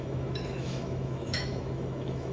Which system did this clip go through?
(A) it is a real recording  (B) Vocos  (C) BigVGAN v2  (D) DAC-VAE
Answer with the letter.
D